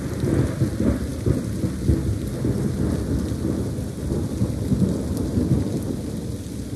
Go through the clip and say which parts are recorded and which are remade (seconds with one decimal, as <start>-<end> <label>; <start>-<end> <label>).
0.0-6.8 recorded